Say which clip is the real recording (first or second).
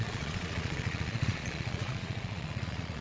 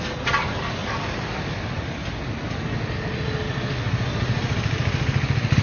second